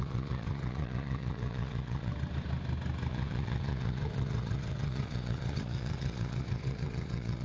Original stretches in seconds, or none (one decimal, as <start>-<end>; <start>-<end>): 2.1-3.1